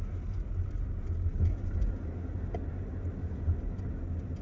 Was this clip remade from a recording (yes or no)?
no